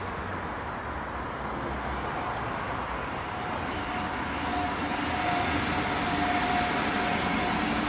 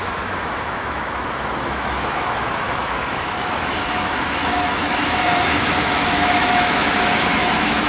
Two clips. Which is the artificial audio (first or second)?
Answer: second